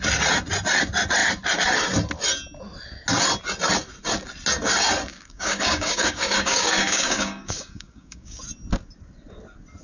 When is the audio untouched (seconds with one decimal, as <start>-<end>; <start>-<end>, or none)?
0.0-5.1; 8.4-9.8